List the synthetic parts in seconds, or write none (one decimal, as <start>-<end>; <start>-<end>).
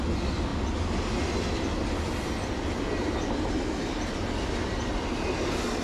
none